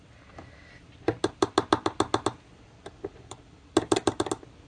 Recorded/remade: recorded